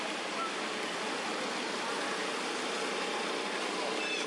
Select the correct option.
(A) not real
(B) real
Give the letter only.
B